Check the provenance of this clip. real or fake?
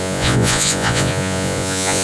fake